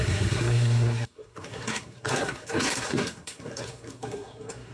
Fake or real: fake